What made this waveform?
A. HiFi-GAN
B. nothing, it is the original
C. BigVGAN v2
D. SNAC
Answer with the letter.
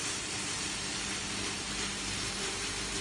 C